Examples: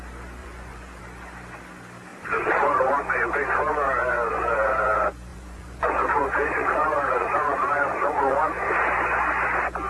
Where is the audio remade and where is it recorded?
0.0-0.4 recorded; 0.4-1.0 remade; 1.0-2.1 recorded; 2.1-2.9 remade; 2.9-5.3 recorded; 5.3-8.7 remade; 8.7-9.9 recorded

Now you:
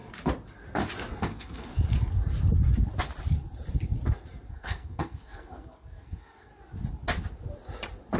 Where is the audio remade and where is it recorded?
0.0-1.2 recorded; 1.2-1.7 remade; 1.7-4.5 recorded; 4.5-6.5 remade; 6.5-8.2 recorded

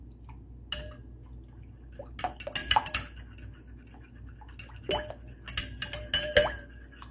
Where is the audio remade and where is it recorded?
0.0-7.1 recorded